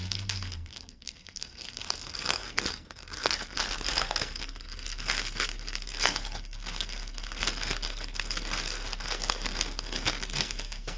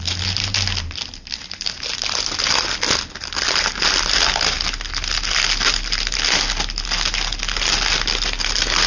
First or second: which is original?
second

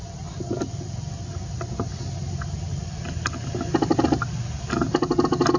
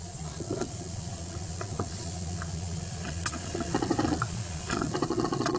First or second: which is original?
first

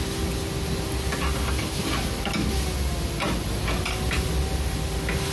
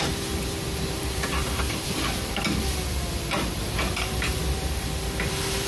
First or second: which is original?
first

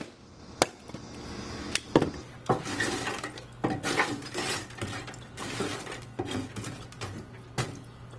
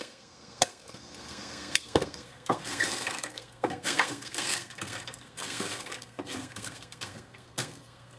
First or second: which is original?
first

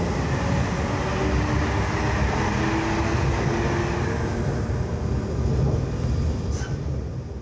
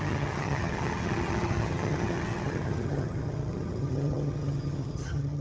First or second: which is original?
first